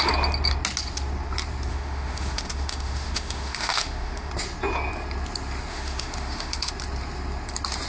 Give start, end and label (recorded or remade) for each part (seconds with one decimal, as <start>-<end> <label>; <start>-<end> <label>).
0.0-1.7 recorded; 1.7-4.3 remade; 4.3-5.7 recorded; 5.7-6.7 remade; 6.7-7.9 recorded